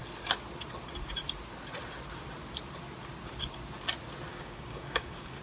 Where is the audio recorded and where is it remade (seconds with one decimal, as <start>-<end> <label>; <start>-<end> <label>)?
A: 0.0-4.3 recorded; 4.3-5.4 remade

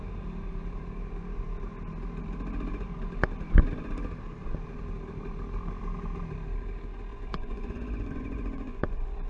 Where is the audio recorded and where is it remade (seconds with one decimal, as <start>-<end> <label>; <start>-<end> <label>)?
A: 0.0-7.1 recorded; 7.1-9.3 remade

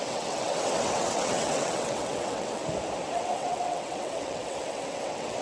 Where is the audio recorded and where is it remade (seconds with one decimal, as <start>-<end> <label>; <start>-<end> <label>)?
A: 0.0-2.6 remade; 2.6-3.1 recorded; 3.1-5.4 remade

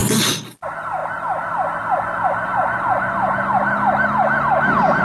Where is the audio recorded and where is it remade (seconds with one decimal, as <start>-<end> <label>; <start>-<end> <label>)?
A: 0.0-5.0 recorded

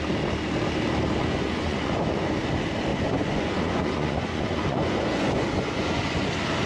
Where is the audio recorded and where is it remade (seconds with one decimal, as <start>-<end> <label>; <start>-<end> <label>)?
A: 0.0-1.2 recorded; 1.2-2.4 remade; 2.4-2.9 recorded; 2.9-6.3 remade; 6.3-6.7 recorded

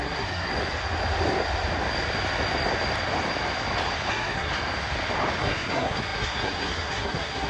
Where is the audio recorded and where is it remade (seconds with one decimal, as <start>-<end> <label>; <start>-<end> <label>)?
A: 0.0-0.5 remade; 0.5-4.1 recorded; 4.1-4.5 remade; 4.5-5.4 recorded; 5.4-7.5 remade